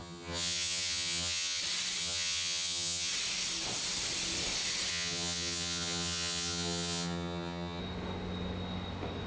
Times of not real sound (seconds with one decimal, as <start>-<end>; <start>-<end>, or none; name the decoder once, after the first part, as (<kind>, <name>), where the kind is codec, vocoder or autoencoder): 0.0-1.6 (vocoder, HiFi-GAN); 2.0-3.1; 4.9-7.8